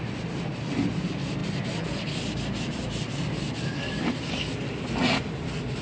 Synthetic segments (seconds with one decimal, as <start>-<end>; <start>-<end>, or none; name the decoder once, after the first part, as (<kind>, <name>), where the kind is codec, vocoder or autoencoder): none